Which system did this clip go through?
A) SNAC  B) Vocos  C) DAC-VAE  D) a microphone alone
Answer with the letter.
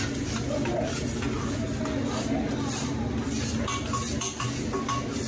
D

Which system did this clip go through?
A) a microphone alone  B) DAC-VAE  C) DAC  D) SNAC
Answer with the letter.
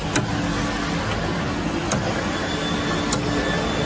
A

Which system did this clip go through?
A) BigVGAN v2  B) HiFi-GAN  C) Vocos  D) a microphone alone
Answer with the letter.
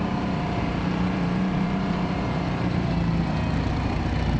A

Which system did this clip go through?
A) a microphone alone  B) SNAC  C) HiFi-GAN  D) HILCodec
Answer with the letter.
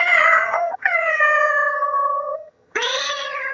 C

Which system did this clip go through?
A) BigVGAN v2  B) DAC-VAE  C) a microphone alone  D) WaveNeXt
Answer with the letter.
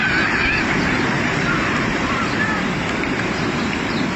A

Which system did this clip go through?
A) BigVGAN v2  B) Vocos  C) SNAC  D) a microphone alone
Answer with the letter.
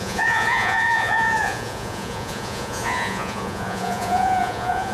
B